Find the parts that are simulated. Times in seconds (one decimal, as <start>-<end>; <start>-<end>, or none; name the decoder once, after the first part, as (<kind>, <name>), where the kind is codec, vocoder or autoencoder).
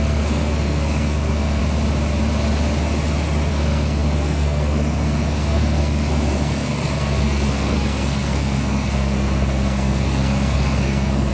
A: 0.0-1.6 (codec, SNAC); 3.5-11.3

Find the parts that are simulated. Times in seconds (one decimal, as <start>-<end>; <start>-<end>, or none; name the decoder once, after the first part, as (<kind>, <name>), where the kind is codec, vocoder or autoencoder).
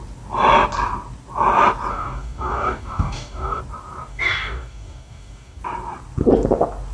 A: 1.9-3.6 (codec, DAC); 4.1-5.6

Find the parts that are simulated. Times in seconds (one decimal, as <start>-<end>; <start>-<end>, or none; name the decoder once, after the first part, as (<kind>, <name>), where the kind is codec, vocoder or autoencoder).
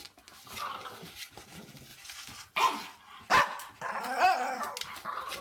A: none